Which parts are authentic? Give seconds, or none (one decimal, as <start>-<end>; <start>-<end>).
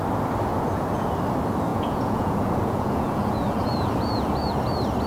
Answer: 0.0-0.5; 1.1-1.7; 4.5-5.1